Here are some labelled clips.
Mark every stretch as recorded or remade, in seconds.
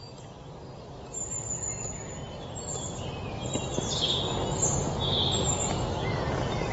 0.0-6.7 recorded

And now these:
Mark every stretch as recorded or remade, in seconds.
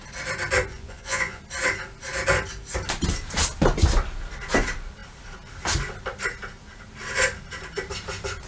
0.0-0.7 recorded; 0.7-1.4 remade; 1.4-8.5 recorded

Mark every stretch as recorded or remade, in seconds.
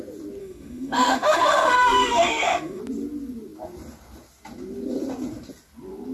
0.0-0.4 recorded; 0.4-2.8 remade; 2.8-6.1 recorded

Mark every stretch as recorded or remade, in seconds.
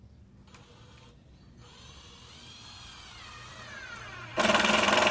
0.0-5.1 recorded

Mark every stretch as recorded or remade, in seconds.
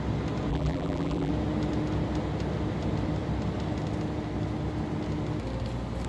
0.0-0.5 recorded; 0.5-1.3 remade; 1.3-6.1 recorded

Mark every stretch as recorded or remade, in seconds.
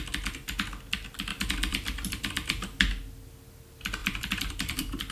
0.0-1.3 recorded; 1.3-2.8 remade; 2.8-4.0 recorded; 4.0-5.1 remade